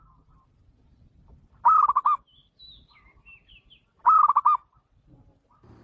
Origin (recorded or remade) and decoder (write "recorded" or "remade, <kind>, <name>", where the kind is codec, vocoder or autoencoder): recorded